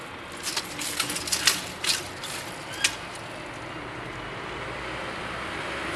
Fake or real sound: real